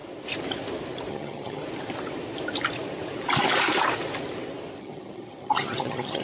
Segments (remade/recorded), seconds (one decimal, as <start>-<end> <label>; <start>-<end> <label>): 0.0-1.1 recorded; 1.1-1.6 remade; 1.6-4.8 recorded; 4.8-6.2 remade